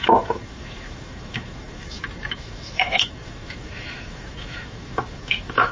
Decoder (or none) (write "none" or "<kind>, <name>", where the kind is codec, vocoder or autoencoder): autoencoder, DAC-VAE